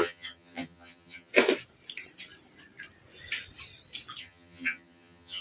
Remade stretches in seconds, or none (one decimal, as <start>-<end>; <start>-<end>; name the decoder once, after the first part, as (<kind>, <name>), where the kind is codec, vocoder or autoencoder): 0.0-1.3 (vocoder, HiFi-GAN); 4.2-5.4